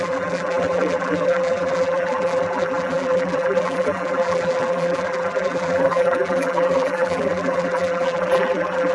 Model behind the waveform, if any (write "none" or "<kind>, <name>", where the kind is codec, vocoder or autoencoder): vocoder, BigVGAN v2